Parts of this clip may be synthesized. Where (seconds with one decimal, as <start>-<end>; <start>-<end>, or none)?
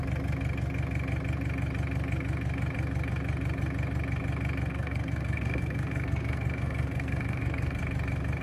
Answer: 4.7-7.8